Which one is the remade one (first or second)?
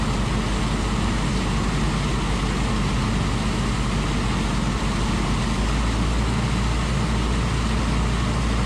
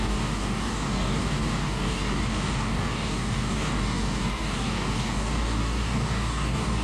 second